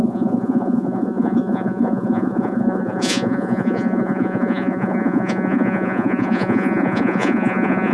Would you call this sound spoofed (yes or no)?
yes